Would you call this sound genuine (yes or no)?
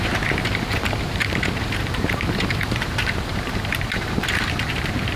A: no